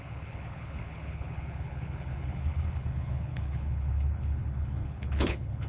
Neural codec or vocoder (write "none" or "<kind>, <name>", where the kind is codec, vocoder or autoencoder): codec, HILCodec